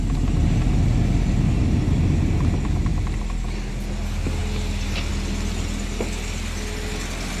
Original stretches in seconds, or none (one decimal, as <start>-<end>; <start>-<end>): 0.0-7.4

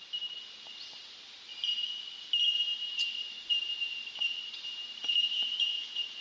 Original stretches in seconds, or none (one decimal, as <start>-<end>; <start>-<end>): 0.0-1.5; 2.0-2.7

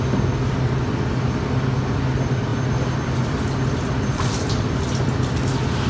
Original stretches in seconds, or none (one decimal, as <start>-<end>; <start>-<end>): 0.0-5.9

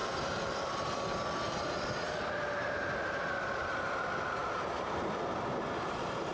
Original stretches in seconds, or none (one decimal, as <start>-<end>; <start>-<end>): 3.7-6.3